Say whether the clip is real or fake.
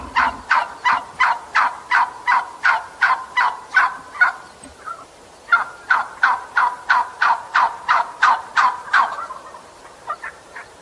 fake